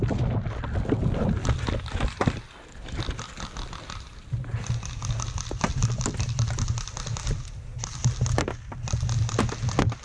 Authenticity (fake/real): real